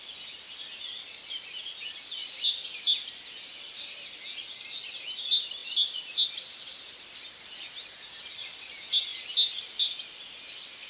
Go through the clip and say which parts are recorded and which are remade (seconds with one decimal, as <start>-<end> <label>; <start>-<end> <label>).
0.0-10.9 recorded